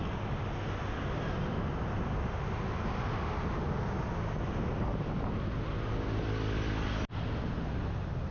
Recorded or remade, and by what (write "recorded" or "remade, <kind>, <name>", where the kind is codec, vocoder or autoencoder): recorded